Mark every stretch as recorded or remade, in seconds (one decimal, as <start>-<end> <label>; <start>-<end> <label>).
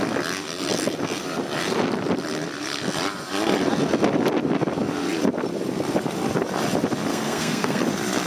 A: 0.0-7.1 recorded; 7.1-7.8 remade; 7.8-8.3 recorded